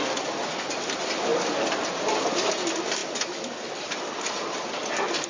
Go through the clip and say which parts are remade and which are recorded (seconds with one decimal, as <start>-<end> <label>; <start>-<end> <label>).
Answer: 0.0-5.3 recorded